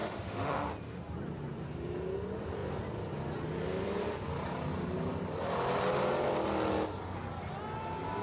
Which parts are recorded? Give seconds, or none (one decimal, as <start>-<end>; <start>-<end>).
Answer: 0.7-8.2